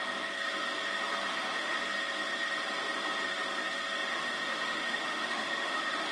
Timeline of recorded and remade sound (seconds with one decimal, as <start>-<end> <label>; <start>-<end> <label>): 0.0-1.3 recorded; 1.3-1.8 remade; 1.8-4.1 recorded; 4.1-6.1 remade